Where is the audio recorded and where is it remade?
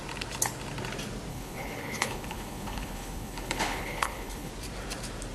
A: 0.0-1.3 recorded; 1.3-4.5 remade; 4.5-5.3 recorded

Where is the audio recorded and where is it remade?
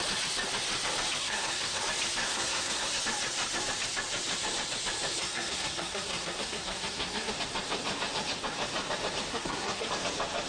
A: 0.0-1.2 recorded; 1.2-1.8 remade; 1.8-2.2 recorded; 2.2-3.0 remade; 3.0-5.2 recorded; 5.2-7.3 remade; 7.3-9.3 recorded; 9.3-9.9 remade; 9.9-10.5 recorded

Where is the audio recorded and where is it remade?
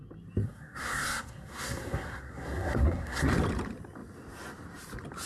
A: 0.0-0.4 recorded; 0.4-3.3 remade; 3.3-5.3 recorded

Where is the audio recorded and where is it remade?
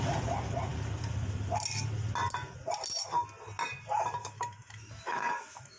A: 0.0-4.2 recorded; 4.2-5.8 remade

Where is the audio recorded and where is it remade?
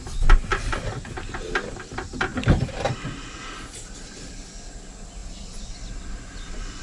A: 0.0-6.8 recorded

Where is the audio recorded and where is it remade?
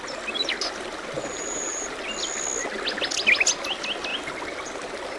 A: 0.0-0.9 recorded; 0.9-2.0 remade; 2.0-5.2 recorded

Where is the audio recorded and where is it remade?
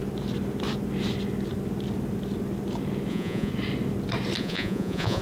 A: 0.0-3.1 recorded; 3.1-3.5 remade; 3.5-4.4 recorded; 4.4-5.2 remade